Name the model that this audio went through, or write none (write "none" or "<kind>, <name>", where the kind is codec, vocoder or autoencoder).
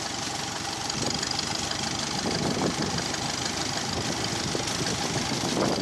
none